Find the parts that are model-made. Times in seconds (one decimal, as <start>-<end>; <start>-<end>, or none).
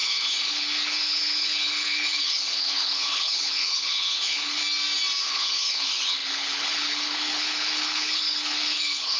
0.0-4.6; 5.2-9.2